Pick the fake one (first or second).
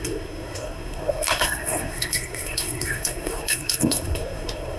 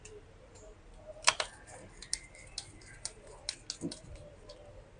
first